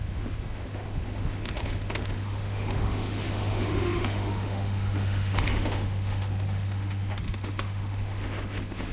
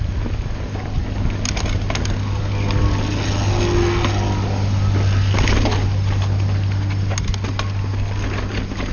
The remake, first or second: first